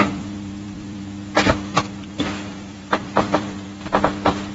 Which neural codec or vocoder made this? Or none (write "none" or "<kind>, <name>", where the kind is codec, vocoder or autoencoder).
vocoder, BigVGAN v2